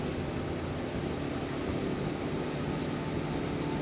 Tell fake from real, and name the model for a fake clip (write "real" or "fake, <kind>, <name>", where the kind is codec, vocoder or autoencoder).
real